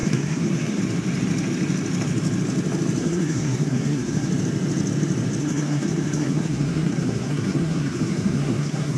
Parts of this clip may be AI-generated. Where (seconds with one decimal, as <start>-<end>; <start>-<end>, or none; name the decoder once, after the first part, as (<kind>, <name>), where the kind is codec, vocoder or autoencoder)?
0.0-0.8 (codec, SNAC); 3.0-4.3; 5.4-9.0